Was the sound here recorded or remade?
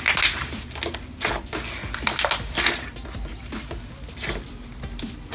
recorded